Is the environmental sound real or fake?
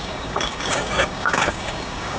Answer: fake